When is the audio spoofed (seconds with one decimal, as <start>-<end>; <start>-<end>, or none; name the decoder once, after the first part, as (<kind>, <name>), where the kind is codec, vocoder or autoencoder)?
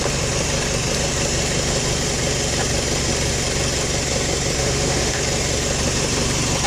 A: 4.6-5.2 (autoencoder, DAC-VAE)